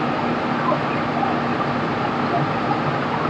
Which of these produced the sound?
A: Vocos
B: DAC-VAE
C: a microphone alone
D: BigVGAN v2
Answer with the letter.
C